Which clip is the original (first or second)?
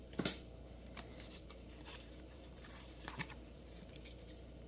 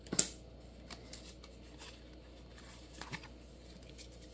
second